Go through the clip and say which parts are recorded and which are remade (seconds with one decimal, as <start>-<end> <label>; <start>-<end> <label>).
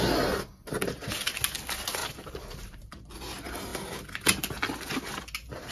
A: 0.0-2.0 recorded; 2.0-3.1 remade; 3.1-5.7 recorded